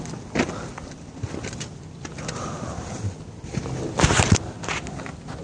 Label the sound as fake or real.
real